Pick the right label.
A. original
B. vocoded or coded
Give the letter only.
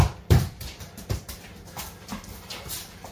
B